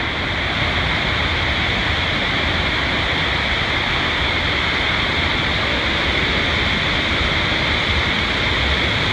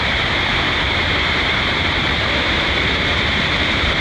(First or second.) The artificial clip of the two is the second